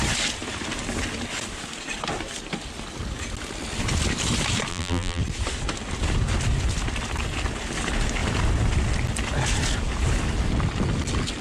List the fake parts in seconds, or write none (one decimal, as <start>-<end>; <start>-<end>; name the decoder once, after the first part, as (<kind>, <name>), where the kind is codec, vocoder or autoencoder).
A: 4.7-5.2 (vocoder, BigVGAN v2)